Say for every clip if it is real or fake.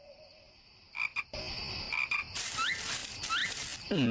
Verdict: real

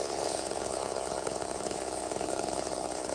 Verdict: fake